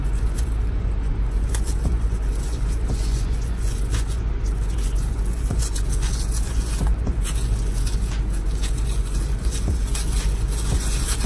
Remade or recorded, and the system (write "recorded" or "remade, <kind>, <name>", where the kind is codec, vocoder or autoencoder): remade, vocoder, Vocos